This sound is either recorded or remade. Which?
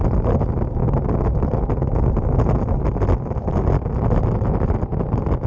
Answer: recorded